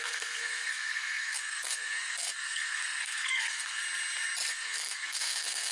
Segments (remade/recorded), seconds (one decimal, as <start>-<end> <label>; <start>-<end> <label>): 0.0-3.8 remade; 3.8-4.5 recorded; 4.5-5.7 remade